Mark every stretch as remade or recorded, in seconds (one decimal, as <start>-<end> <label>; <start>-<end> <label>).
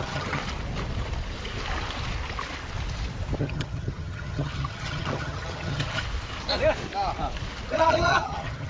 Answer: 0.0-0.4 remade; 0.4-3.4 recorded; 3.4-6.0 remade; 6.0-7.7 recorded; 7.7-8.7 remade